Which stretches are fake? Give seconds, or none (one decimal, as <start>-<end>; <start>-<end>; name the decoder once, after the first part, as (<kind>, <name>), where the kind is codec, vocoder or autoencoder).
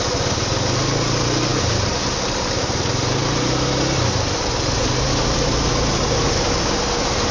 none